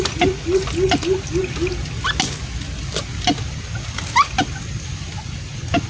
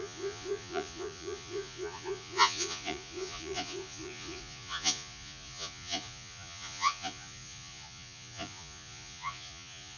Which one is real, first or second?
first